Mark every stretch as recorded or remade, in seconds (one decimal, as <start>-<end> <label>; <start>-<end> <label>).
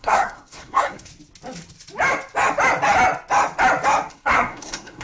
0.0-1.1 remade; 1.1-4.1 recorded; 4.1-5.0 remade